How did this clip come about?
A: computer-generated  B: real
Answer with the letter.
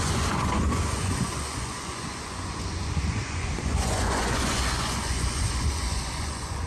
A